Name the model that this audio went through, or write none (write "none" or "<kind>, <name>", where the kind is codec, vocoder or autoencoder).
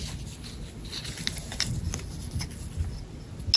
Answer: none